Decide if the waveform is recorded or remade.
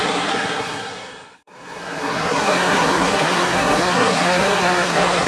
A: remade